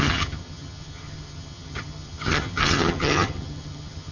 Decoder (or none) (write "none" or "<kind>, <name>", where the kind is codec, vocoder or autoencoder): vocoder, HiFi-GAN